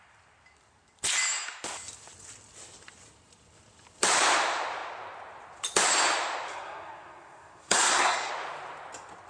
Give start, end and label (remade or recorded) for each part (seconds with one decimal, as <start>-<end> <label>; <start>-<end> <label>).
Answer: 0.0-6.5 recorded; 6.5-8.3 remade; 8.3-9.3 recorded